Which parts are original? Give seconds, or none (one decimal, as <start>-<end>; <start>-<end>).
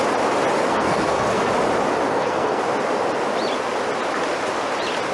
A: 0.0-0.7; 1.5-2.1; 2.6-5.1